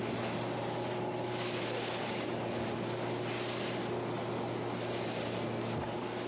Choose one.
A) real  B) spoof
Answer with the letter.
A